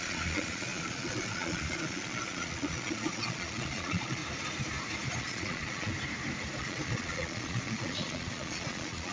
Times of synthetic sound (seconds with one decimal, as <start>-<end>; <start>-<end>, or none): 0.0-4.2; 5.2-5.9; 6.6-9.1